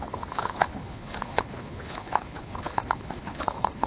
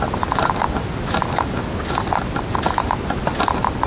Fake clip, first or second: first